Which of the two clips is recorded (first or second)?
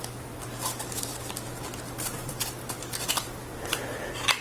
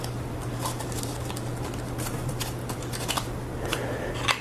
first